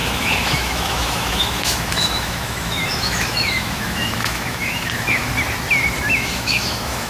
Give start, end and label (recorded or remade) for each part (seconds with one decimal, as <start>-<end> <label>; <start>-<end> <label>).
0.0-5.3 remade; 5.3-6.1 recorded; 6.1-7.1 remade